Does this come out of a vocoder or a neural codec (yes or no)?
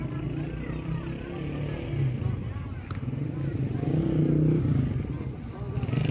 no